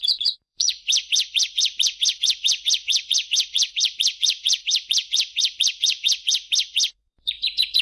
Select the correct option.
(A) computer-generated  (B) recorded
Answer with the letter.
A